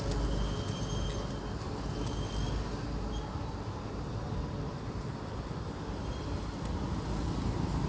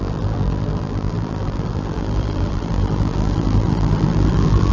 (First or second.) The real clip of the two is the first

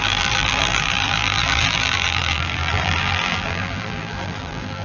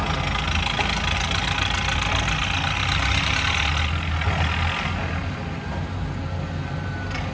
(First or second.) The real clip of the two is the second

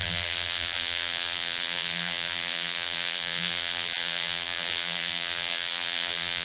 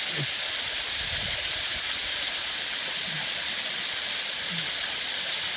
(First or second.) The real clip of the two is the second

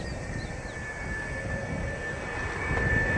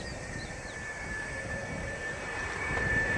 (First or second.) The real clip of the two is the first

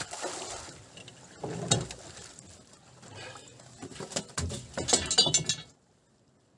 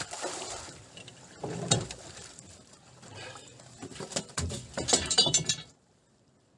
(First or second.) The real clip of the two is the first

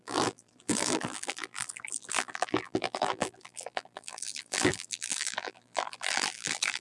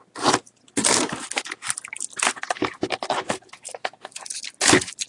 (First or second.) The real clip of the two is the second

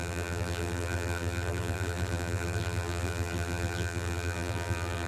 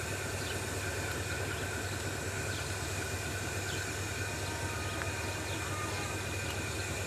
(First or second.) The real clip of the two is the second